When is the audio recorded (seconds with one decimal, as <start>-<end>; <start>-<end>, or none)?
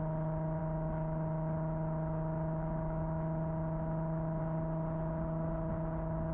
0.0-6.3